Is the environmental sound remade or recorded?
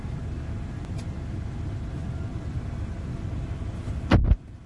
recorded